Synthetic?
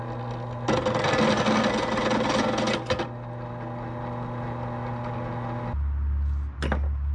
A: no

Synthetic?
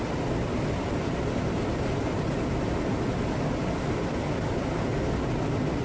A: no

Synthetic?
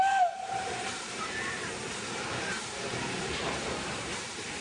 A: yes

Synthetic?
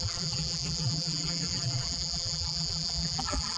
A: yes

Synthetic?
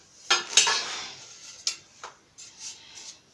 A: no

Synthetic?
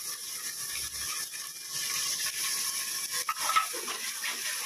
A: no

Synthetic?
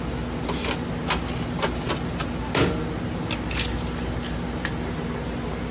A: no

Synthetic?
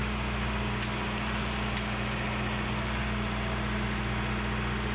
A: no